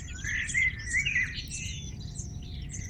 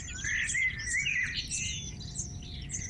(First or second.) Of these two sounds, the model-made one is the first